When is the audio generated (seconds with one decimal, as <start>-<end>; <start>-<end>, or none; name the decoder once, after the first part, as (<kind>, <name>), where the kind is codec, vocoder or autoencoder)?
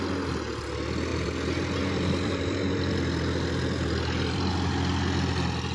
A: 1.1-4.5 (vocoder, BigVGAN v2)